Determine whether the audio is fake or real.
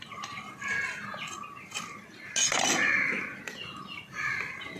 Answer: real